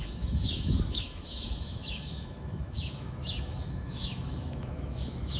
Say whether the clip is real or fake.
fake